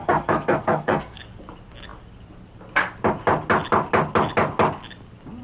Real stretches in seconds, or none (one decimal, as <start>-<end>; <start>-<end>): 1.2-5.4